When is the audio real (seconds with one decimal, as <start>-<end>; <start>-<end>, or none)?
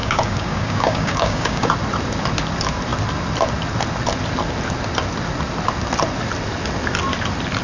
1.7-7.6